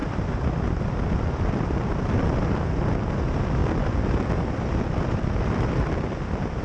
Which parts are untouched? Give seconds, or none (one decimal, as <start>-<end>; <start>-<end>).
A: 2.7-3.6